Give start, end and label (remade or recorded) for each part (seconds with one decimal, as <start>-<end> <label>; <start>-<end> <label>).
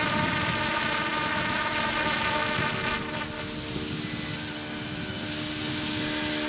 0.0-6.5 recorded